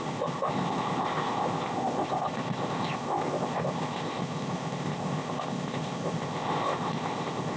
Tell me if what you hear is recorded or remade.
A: remade